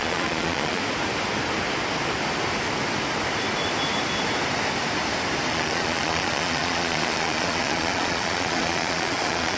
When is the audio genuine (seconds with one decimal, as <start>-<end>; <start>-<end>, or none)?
0.8-5.5